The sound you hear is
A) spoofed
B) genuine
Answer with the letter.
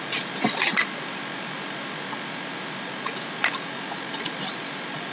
B